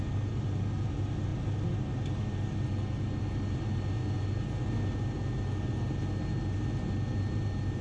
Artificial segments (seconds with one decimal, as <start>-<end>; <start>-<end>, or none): none